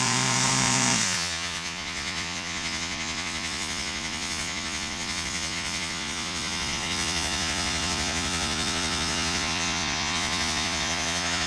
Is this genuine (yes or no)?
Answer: no